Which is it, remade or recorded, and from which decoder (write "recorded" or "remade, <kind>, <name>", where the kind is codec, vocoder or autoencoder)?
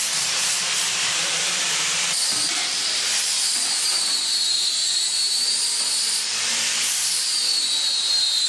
remade, vocoder, BigVGAN v2